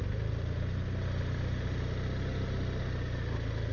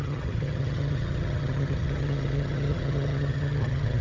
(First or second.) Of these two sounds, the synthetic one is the second